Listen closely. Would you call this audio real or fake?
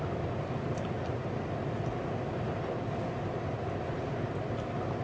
real